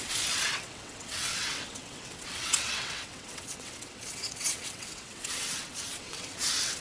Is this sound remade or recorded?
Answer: remade